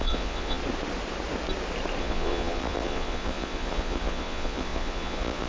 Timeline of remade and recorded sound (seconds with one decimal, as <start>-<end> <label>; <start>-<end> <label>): 0.0-0.6 remade; 0.6-2.0 recorded; 2.0-5.5 remade